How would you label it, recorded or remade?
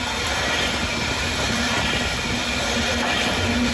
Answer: recorded